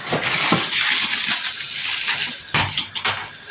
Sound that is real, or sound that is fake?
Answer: real